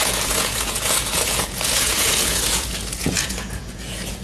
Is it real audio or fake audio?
fake